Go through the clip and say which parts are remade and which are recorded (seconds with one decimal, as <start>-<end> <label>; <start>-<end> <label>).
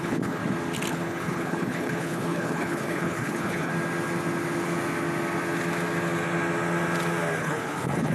0.0-0.4 remade; 0.4-0.9 recorded; 0.9-3.7 remade; 3.7-7.4 recorded; 7.4-8.1 remade